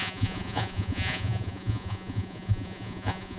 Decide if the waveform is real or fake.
fake